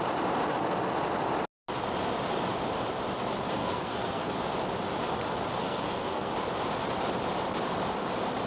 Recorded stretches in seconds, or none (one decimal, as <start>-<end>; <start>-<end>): 0.0-3.6; 4.4-5.6; 6.3-8.5